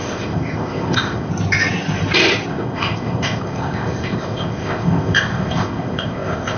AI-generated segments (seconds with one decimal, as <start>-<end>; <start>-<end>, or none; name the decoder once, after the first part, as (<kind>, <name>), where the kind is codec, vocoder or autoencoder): 0.0-1.3 (codec, ZipCodec); 2.5-6.6